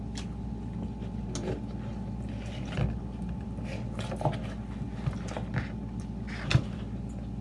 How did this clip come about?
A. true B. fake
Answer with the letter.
A